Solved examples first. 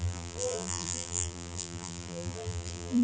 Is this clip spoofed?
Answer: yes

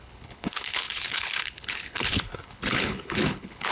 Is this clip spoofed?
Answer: yes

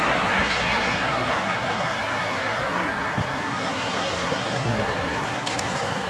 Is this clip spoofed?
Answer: yes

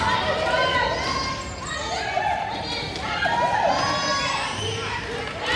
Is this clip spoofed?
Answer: no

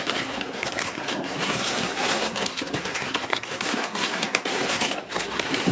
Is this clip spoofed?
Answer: yes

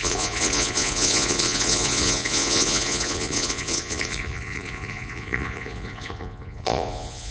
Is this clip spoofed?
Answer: yes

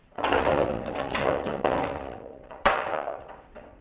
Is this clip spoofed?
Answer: yes